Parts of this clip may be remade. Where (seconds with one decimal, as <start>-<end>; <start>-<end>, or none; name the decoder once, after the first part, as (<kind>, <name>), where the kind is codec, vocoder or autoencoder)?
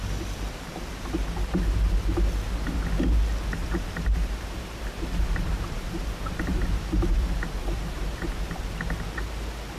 3.6-8.6 (vocoder, BigVGAN v2)